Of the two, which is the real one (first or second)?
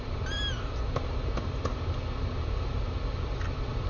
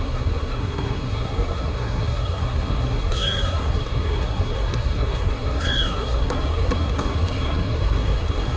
first